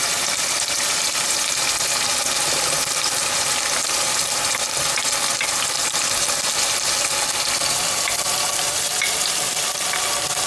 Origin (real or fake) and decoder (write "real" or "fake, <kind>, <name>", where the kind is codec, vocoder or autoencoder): real